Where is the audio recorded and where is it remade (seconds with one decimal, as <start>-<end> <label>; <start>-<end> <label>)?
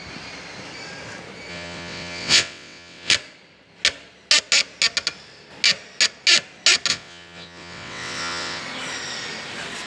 0.0-1.5 recorded; 1.5-3.1 remade; 3.1-6.9 recorded; 6.9-8.6 remade; 8.6-9.9 recorded